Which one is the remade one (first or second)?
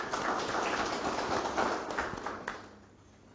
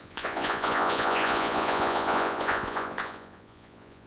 second